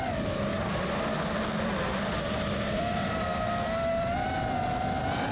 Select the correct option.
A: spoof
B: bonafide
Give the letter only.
B